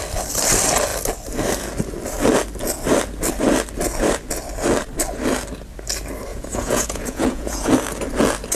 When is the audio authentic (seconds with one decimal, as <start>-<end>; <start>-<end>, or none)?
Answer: 0.0-6.3; 7.7-8.6